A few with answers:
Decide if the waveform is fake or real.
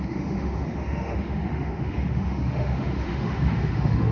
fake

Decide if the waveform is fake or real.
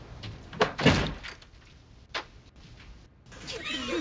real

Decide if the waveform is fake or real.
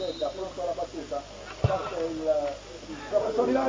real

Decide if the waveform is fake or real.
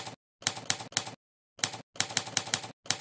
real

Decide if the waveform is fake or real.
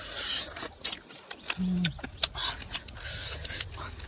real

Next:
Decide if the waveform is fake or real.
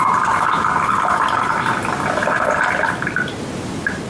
fake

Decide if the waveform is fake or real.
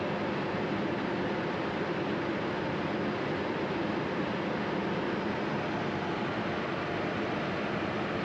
real